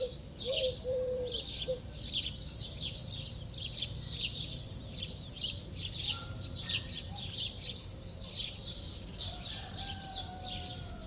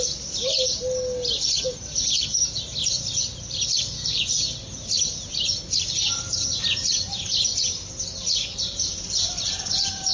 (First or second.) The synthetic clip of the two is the first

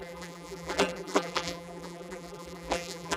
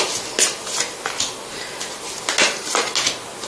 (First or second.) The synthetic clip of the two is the first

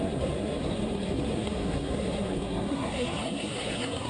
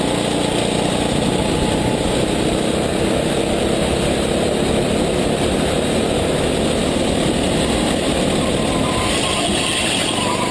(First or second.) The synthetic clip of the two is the first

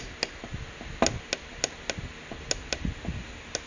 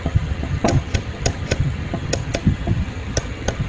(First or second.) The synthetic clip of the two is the second